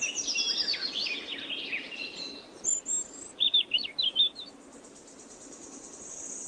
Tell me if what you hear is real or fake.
real